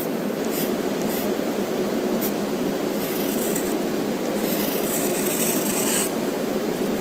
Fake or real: real